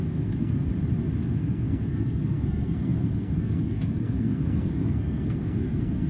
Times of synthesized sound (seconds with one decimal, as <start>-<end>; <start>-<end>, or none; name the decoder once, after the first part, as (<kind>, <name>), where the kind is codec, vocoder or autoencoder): 0.0-0.7 (codec, SNAC); 1.2-6.1